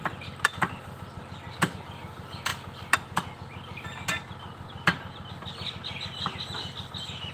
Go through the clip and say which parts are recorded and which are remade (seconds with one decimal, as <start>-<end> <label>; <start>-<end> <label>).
0.0-7.3 recorded